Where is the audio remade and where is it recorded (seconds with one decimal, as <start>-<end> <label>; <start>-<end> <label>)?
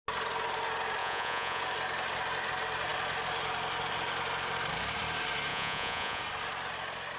0.0-1.0 recorded; 1.0-1.6 remade; 1.6-5.5 recorded; 5.5-6.2 remade; 6.2-7.2 recorded